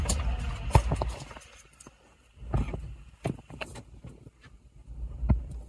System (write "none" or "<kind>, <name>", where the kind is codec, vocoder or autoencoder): none